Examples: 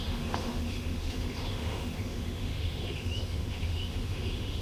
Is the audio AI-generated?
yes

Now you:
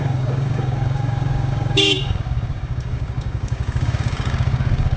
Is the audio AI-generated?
yes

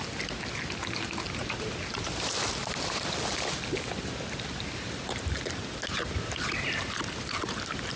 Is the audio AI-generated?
no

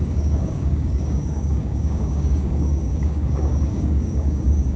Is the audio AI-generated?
yes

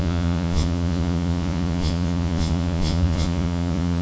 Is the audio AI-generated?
yes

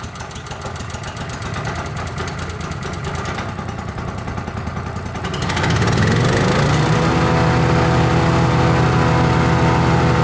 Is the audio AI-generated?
no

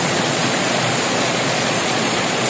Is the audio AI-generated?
yes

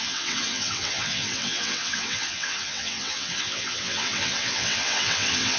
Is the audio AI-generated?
yes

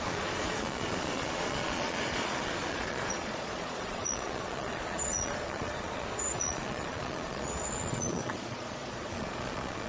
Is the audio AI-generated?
yes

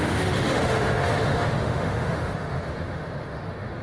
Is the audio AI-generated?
yes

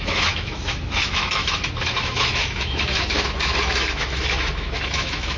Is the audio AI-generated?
yes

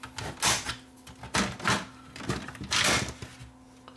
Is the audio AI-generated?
no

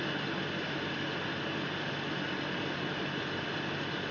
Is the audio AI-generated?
no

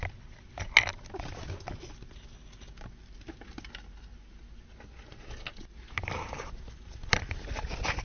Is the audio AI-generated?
no